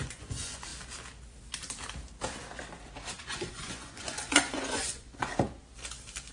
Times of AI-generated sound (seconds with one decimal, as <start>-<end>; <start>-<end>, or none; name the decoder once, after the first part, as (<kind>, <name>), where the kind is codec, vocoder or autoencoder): 0.0-0.7 (vocoder, Vocos); 3.2-5.3